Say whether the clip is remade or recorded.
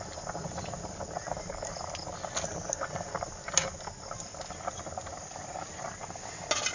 recorded